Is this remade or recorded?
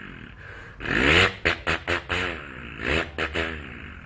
recorded